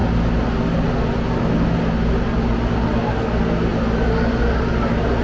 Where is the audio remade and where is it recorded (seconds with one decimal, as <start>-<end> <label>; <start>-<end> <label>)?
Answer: 0.0-5.2 recorded